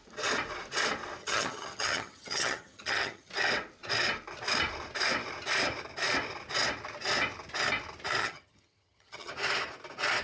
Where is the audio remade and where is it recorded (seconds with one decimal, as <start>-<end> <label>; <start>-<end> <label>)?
0.0-1.2 recorded; 1.2-3.3 remade; 3.3-8.2 recorded; 8.2-9.3 remade; 9.3-10.2 recorded